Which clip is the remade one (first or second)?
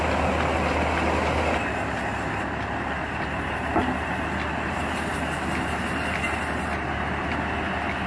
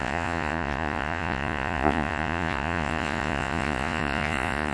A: second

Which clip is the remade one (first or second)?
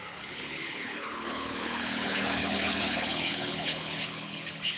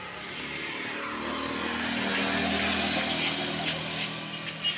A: first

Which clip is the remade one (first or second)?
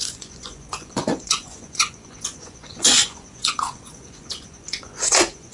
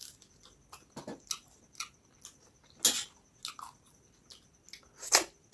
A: first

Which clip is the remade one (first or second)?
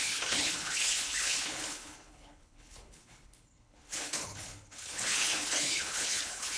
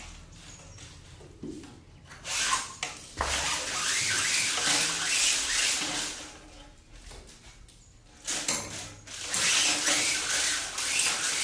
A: first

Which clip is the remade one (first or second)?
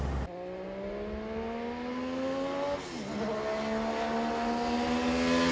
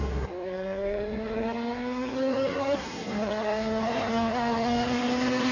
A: second